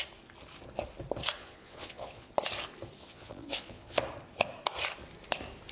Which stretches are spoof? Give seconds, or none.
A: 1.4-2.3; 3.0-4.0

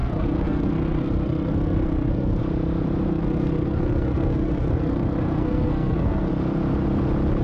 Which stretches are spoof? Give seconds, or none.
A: 0.0-2.4; 3.1-6.3

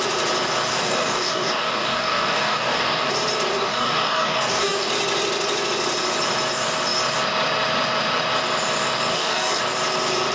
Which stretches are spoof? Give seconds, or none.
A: 0.7-3.1; 3.5-4.9; 9.1-9.6

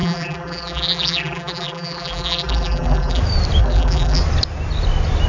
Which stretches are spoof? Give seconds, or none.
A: 0.0-3.2; 3.6-4.2